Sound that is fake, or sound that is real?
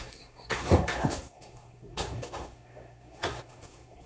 fake